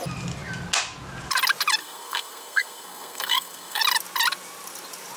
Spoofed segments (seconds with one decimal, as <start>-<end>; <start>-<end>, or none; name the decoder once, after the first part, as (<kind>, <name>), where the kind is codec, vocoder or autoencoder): 1.8-3.8 (codec, SNAC)